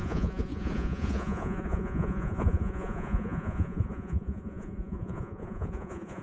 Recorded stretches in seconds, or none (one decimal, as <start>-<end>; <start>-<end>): none